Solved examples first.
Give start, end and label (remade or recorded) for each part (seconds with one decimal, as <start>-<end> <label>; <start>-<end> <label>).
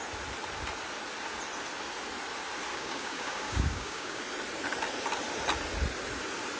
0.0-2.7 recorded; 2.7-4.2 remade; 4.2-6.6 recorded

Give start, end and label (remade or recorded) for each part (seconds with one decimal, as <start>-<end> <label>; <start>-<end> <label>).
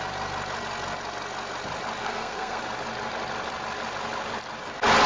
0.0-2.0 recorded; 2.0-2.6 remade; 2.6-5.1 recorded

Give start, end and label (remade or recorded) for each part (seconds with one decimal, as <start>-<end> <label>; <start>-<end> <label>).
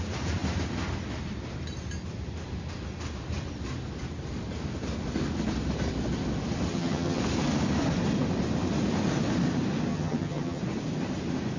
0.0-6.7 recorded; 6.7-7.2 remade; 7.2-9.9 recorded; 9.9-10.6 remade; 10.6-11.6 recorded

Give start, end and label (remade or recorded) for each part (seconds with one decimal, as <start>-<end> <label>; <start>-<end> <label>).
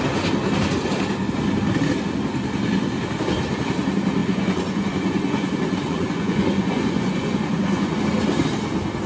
0.0-4.2 recorded; 4.2-8.0 remade; 8.0-9.1 recorded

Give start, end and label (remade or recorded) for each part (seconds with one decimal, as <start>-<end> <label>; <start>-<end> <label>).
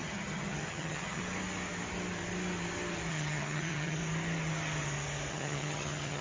0.0-1.2 remade; 1.2-3.1 recorded; 3.1-4.0 remade; 4.0-5.3 recorded; 5.3-6.2 remade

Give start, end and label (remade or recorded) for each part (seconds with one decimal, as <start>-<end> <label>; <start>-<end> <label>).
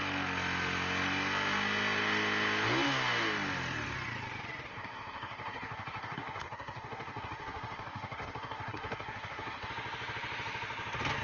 0.0-4.7 recorded; 4.7-9.7 remade; 9.7-11.2 recorded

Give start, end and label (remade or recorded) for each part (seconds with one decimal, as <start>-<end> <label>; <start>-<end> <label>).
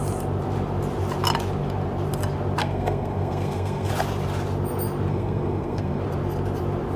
0.0-2.6 recorded; 2.6-3.9 remade; 3.9-5.1 recorded; 5.1-6.0 remade; 6.0-7.0 recorded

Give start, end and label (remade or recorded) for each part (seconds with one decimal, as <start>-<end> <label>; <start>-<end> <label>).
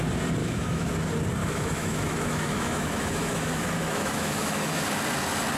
0.0-0.4 recorded; 0.4-0.9 remade; 0.9-1.4 recorded; 1.4-4.8 remade; 4.8-5.6 recorded